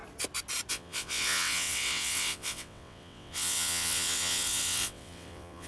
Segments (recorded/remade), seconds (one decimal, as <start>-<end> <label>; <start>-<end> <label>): 0.0-0.7 recorded; 0.7-5.7 remade